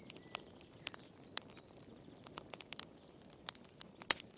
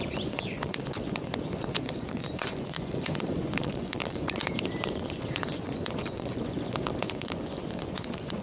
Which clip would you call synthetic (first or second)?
second